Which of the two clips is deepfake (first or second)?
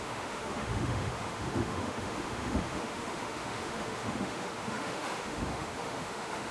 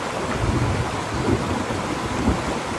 first